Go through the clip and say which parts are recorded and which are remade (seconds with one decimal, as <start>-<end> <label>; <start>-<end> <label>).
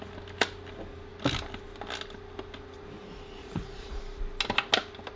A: 0.0-3.4 recorded; 3.4-4.0 remade; 4.0-5.2 recorded